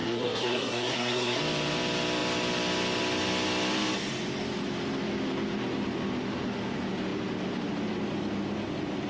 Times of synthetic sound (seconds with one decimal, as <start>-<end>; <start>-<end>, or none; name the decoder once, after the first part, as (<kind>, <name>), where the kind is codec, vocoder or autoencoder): 0.0-1.4 (codec, SNAC)